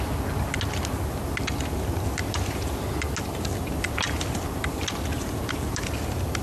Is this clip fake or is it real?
real